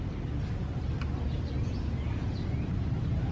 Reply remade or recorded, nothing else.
recorded